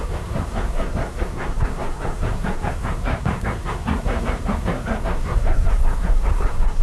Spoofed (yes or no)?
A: yes